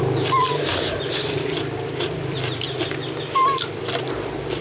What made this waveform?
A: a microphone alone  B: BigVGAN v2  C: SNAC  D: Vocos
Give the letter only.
B